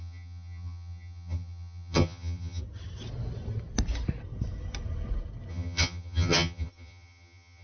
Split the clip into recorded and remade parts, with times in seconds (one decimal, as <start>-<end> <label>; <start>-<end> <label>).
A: 0.0-2.6 remade; 2.6-5.5 recorded; 5.5-7.6 remade